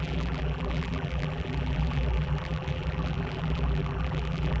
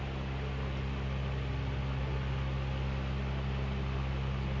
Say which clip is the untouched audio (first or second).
second